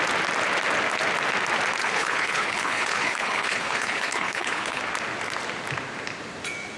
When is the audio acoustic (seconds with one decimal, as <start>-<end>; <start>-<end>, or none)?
0.0-1.8; 4.8-6.8